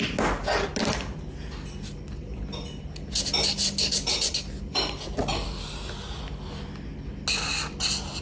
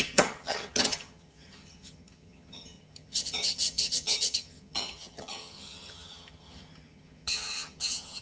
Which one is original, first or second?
first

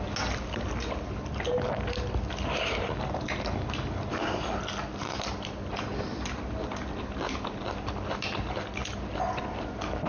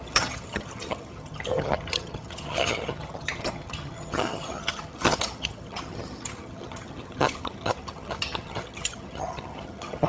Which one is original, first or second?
first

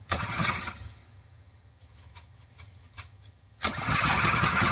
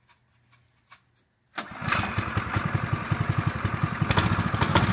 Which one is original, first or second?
second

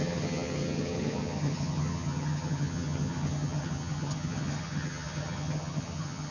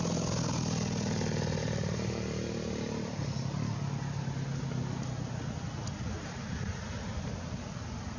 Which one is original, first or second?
second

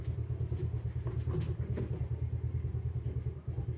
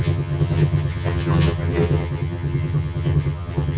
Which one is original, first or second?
first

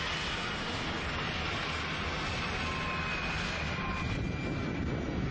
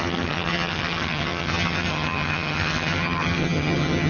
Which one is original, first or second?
first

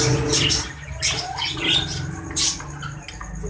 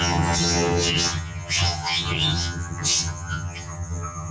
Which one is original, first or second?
first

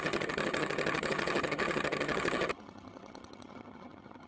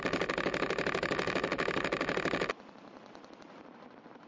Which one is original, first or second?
second